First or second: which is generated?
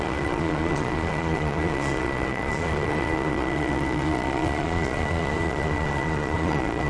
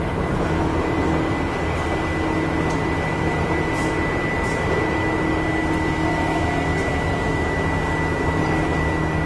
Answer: first